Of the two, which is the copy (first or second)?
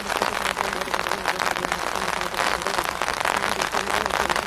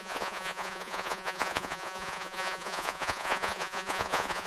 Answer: second